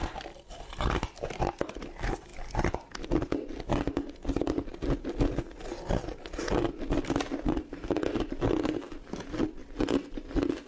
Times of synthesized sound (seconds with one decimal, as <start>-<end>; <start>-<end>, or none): none

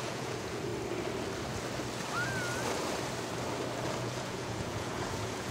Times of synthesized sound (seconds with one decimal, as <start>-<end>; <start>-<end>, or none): 0.0-0.7; 4.0-5.5

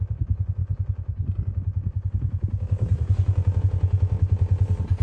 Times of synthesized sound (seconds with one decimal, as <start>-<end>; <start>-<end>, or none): none